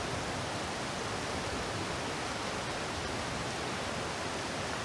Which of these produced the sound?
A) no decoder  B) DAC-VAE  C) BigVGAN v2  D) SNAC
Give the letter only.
A